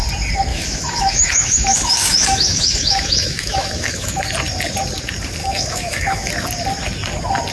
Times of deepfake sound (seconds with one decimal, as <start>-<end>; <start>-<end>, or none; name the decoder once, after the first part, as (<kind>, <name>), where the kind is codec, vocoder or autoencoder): 0.5-4.2 (autoencoder, DAC-VAE); 5.4-6.3